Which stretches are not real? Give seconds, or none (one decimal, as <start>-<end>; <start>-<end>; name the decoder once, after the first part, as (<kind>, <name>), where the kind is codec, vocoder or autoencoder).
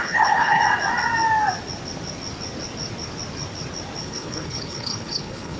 0.0-0.6 (codec, HILCodec); 4.0-5.6